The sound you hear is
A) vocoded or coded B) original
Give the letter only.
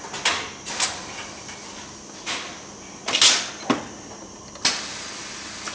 B